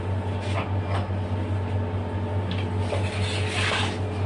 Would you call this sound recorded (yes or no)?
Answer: yes